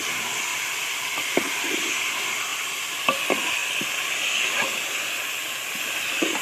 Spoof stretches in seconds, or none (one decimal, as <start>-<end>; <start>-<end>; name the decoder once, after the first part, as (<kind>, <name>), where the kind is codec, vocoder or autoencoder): 0.5-1.7 (vocoder, BigVGAN v2); 2.5-3.2